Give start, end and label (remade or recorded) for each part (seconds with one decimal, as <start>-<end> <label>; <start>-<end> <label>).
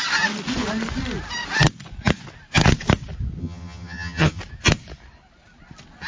0.0-3.4 recorded; 3.4-4.4 remade; 4.4-6.1 recorded